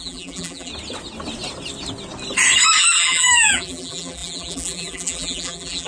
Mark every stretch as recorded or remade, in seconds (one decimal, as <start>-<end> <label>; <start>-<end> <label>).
0.0-0.7 remade; 0.7-2.8 recorded; 2.8-5.9 remade